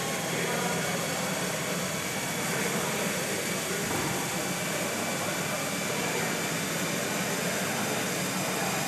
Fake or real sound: real